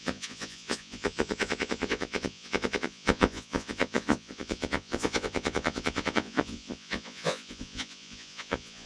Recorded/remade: remade